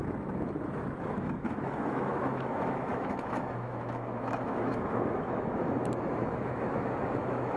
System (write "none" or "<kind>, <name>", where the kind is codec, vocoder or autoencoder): autoencoder, DAC-VAE